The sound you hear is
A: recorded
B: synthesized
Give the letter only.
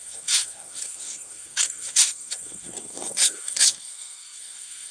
B